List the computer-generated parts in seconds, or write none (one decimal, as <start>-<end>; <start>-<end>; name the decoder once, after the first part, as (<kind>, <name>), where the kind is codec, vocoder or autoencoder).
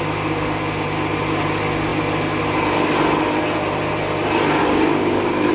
4.6-5.5 (codec, DAC)